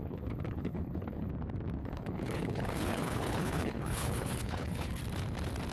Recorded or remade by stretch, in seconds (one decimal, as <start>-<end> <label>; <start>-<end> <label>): 0.0-1.3 remade; 1.3-1.8 recorded; 1.8-5.0 remade; 5.0-5.7 recorded